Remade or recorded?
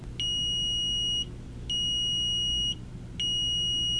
recorded